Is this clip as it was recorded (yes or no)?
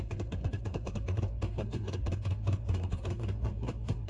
no